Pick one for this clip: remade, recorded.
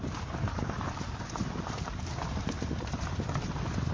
remade